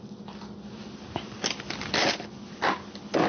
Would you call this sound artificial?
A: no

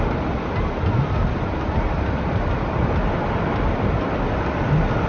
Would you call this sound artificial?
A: no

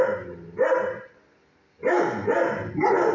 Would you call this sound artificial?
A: no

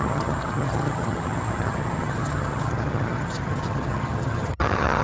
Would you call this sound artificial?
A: yes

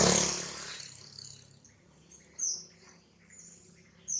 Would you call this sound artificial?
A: no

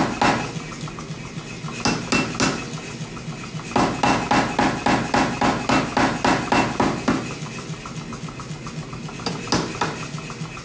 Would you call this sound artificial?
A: no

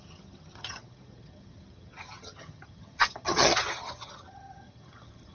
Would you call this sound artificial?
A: yes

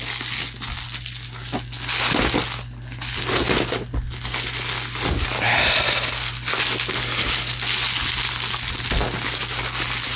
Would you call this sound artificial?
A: no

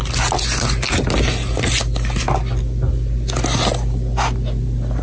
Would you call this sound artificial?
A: no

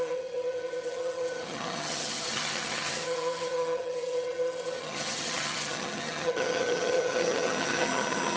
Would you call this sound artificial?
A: yes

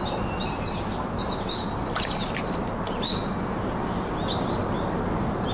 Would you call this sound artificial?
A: no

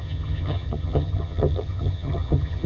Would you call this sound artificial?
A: yes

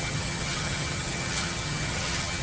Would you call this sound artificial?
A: yes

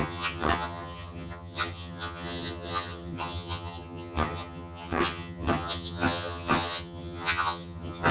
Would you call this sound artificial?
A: yes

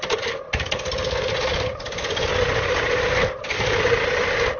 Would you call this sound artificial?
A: no